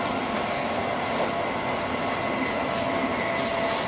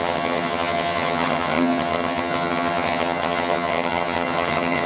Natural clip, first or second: first